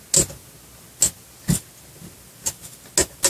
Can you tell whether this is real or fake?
real